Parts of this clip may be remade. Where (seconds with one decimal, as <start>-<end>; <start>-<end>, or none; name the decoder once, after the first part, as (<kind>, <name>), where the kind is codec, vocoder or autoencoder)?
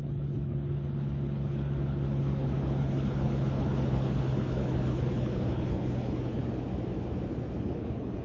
0.0-6.4 (codec, HILCodec); 7.6-8.2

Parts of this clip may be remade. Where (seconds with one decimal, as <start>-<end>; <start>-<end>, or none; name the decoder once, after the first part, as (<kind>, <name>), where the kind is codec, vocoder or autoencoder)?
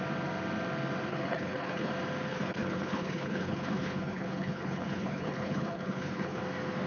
1.1-1.9 (codec, HILCodec); 2.3-6.4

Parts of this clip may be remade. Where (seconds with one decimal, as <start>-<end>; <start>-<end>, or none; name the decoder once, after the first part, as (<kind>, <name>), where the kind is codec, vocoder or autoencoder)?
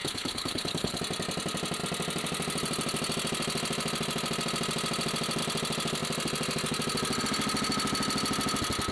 0.0-1.0 (codec, HILCodec)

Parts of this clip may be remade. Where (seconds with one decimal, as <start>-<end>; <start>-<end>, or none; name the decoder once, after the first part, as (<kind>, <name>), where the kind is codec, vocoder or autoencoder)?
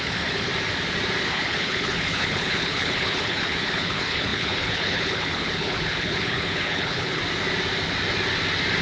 0.0-0.5 (codec, HILCodec); 1.2-7.2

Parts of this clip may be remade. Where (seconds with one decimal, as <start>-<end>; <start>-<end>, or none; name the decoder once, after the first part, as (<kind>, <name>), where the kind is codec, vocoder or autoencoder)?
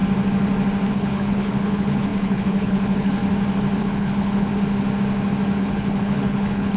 0.9-3.2 (codec, HILCodec); 3.8-4.5; 5.6-6.8